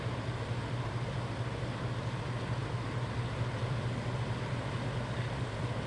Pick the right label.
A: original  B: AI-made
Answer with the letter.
A